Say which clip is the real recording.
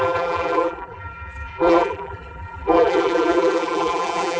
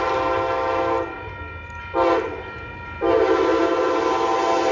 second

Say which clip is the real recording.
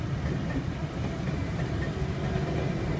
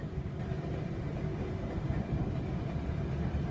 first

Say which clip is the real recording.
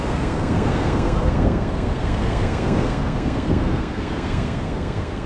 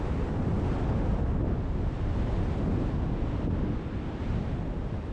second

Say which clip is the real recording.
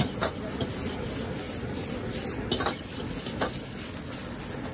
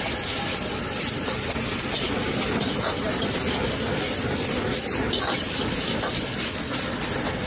first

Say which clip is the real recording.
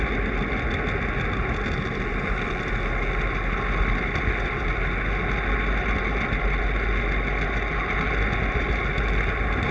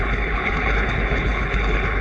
first